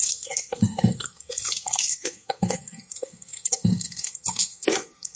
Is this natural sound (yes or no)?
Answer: no